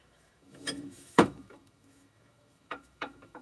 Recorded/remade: remade